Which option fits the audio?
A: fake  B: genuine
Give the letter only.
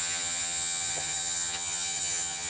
A